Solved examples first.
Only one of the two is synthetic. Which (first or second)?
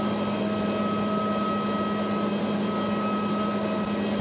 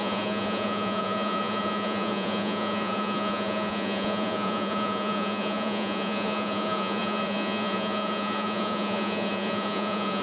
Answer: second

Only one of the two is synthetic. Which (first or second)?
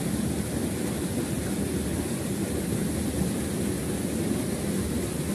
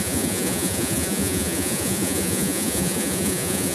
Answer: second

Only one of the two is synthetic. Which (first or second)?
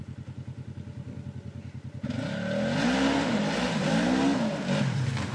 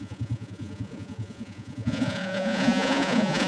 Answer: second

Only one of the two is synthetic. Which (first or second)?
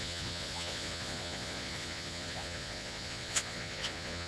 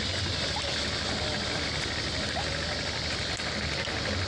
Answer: first